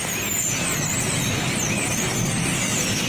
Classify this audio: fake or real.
real